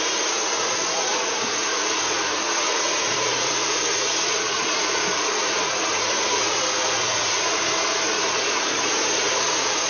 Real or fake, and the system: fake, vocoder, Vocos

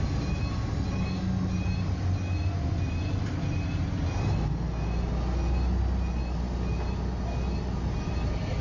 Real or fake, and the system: real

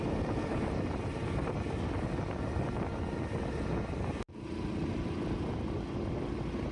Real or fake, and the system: real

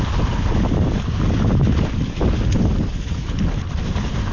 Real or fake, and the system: real